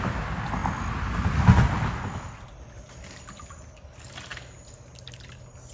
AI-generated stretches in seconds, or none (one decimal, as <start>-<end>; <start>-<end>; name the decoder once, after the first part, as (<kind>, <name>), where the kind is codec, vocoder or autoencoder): none